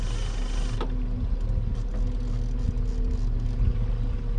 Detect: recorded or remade recorded